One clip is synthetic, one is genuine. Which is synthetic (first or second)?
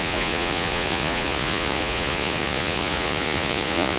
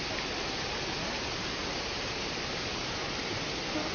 first